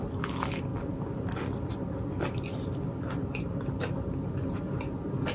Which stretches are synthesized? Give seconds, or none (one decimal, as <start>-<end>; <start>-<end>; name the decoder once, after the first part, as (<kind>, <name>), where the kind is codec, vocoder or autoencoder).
none